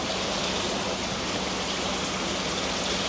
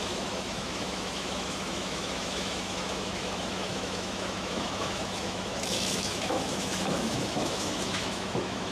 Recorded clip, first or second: first